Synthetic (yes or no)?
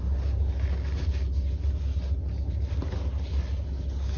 no